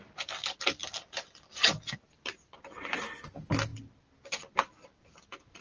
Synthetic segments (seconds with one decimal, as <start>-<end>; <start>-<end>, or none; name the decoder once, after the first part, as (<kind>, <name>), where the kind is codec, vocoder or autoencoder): none